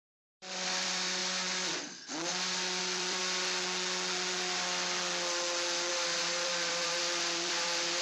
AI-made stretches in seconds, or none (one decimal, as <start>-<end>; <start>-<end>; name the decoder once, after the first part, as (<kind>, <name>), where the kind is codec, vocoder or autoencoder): 0.0-1.2 (vocoder, BigVGAN v2); 2.8-3.2; 5.9-8.0